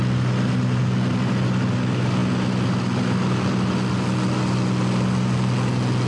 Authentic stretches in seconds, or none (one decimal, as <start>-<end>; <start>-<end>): 0.0-6.1